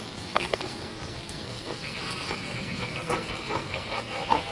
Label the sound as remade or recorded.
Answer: remade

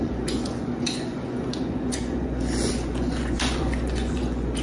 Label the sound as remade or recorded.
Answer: remade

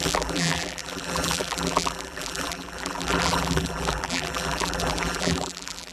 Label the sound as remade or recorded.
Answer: remade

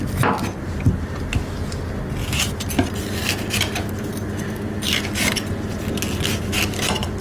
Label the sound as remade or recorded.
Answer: recorded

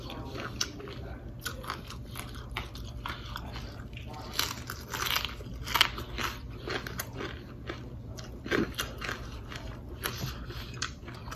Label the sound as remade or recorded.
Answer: recorded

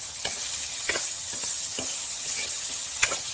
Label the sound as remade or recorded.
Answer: remade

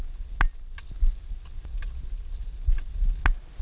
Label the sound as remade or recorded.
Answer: recorded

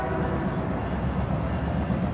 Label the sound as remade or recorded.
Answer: recorded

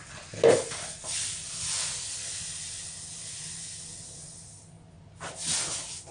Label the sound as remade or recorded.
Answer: recorded